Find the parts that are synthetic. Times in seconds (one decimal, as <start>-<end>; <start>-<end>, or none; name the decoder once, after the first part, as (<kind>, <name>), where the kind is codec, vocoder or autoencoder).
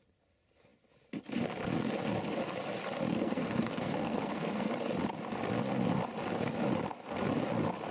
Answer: 3.1-4.7 (codec, SNAC)